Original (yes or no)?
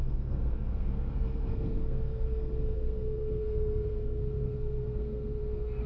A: no